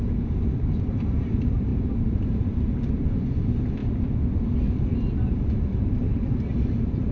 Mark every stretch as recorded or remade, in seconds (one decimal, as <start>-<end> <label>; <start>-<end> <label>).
0.0-3.8 remade; 3.8-5.3 recorded; 5.3-7.1 remade